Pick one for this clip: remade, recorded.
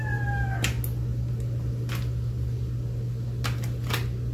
recorded